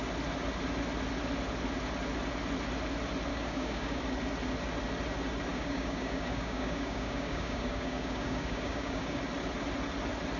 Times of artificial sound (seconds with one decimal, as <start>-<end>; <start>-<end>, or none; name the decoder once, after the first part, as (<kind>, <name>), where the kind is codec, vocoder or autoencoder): 3.3-4.0 (codec, DAC); 5.5-9.2